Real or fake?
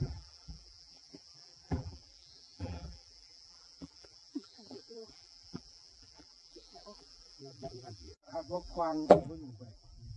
fake